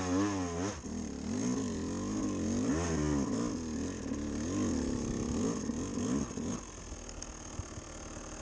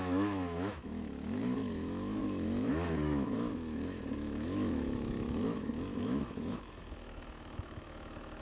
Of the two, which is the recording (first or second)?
first